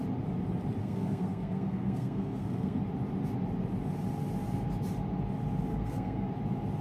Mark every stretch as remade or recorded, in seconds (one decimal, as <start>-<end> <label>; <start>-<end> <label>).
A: 0.0-0.8 recorded; 0.8-2.8 remade; 2.8-5.7 recorded; 5.7-6.3 remade; 6.3-6.8 recorded